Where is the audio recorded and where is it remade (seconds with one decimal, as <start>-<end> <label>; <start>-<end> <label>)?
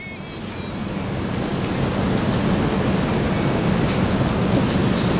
0.0-5.2 recorded